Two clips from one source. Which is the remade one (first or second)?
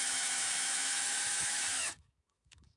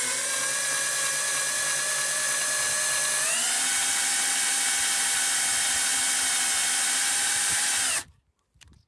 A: first